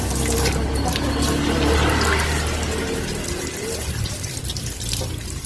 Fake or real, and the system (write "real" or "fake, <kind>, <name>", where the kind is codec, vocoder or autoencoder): real